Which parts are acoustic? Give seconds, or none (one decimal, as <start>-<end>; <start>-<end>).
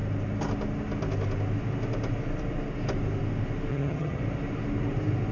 0.0-3.7; 4.2-5.3